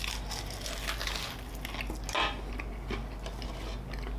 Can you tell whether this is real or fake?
real